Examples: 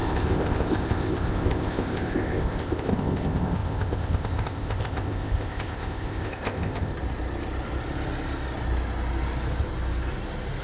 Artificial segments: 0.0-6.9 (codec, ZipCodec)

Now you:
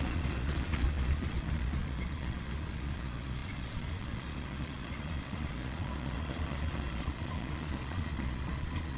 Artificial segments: 0.0-9.0 (vocoder, Vocos)

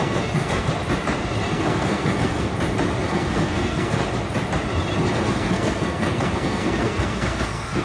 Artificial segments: 0.0-0.7 (codec, SNAC); 1.5-2.5; 3.1-4.0; 5.2-7.8

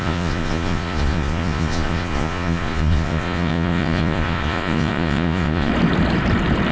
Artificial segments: 0.0-5.7 (vocoder, Vocos)

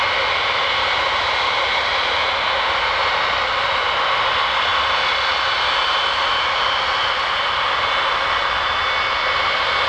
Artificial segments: none

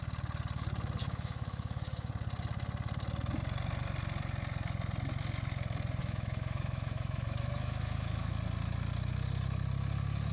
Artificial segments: 1.0-2.1 (autoencoder, DAC-VAE); 6.0-8.3

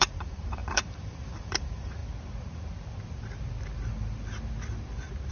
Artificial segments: 0.0-2.0 (vocoder, BigVGAN v2)